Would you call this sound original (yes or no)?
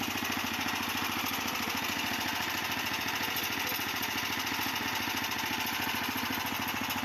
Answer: yes